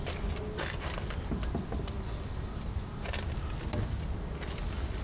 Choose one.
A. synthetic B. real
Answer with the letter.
B